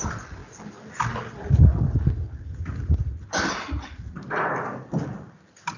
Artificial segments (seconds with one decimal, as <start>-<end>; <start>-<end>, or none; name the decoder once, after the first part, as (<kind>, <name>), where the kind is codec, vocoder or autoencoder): none